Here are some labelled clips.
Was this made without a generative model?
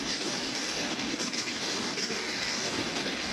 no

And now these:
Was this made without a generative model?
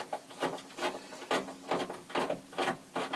yes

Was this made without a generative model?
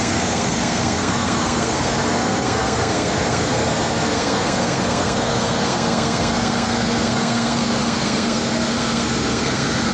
no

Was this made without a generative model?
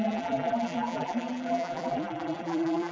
no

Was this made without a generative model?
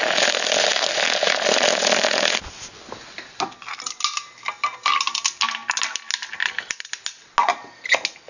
yes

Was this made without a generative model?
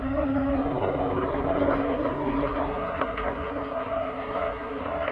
no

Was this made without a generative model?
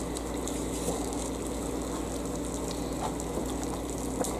yes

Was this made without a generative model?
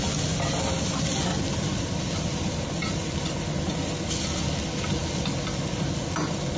yes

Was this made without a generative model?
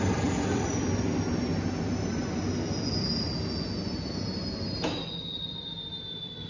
yes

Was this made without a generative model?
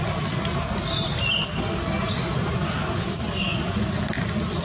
yes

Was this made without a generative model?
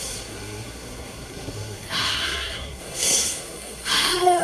no